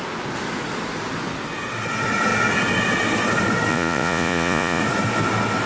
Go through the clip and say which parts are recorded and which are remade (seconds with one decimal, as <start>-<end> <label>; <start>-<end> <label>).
0.0-3.7 recorded; 3.7-4.8 remade; 4.8-5.7 recorded